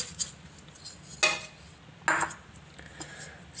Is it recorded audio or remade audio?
recorded